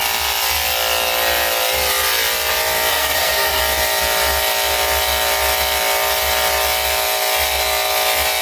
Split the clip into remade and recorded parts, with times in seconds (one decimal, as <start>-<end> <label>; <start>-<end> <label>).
0.0-2.9 recorded; 2.9-3.6 remade; 3.6-8.4 recorded

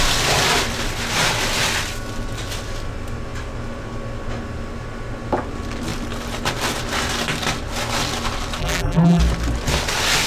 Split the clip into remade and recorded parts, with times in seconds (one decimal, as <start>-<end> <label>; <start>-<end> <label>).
0.0-8.6 recorded; 8.6-9.2 remade; 9.2-10.3 recorded

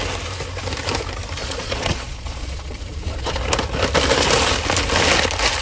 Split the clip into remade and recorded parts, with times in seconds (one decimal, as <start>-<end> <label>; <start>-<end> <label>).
0.0-1.4 recorded; 1.4-3.4 remade; 3.4-5.6 recorded

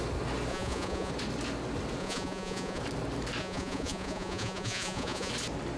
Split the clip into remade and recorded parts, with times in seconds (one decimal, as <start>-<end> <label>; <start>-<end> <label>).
0.0-0.5 recorded; 0.5-1.1 remade; 1.1-2.0 recorded; 2.0-2.8 remade; 2.8-3.4 recorded; 3.4-5.3 remade; 5.3-5.8 recorded

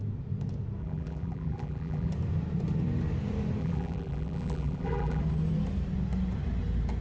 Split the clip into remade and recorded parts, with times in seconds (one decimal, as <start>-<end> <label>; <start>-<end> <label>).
0.0-0.8 recorded; 0.8-2.1 remade; 2.1-3.6 recorded; 3.6-5.2 remade; 5.2-7.0 recorded

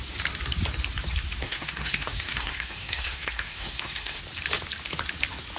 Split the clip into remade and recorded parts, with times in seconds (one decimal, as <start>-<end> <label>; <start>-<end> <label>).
0.0-1.4 recorded; 1.4-4.2 remade; 4.2-5.6 recorded

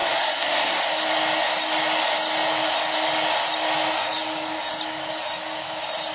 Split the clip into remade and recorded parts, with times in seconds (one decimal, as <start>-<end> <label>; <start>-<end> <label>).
0.0-0.8 remade; 0.8-6.1 recorded

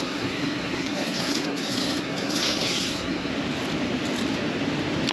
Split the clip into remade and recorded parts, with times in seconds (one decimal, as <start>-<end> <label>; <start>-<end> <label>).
0.0-3.3 remade; 3.3-5.1 recorded